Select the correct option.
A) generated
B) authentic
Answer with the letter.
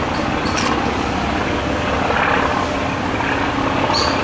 B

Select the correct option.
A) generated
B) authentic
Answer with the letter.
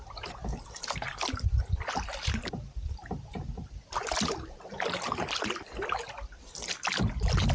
B